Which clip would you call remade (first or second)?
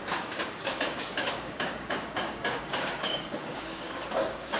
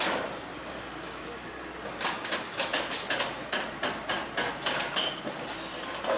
first